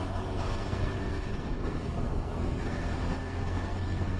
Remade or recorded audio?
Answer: remade